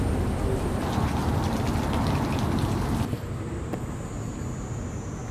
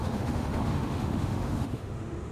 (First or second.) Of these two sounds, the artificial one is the second